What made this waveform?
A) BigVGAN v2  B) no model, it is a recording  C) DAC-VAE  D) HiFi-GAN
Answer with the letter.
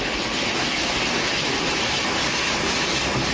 B